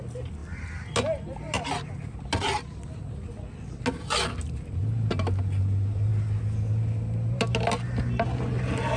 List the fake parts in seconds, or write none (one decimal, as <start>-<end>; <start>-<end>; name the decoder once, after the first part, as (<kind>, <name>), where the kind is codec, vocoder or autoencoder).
none